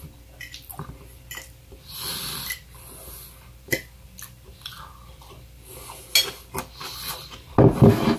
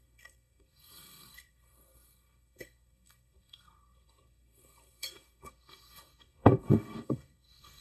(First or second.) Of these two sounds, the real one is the first